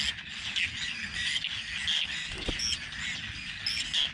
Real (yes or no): yes